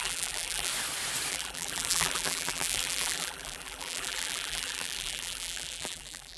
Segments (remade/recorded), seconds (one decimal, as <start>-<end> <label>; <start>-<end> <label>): 0.0-0.7 remade; 0.7-1.3 recorded; 1.3-6.4 remade